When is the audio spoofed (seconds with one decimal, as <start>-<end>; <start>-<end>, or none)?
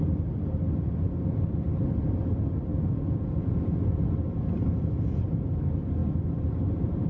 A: 2.7-4.1